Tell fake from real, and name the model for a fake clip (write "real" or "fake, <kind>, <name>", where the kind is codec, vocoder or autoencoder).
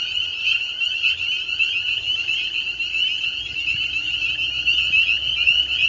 real